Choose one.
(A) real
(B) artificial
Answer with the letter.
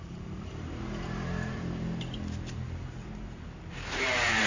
B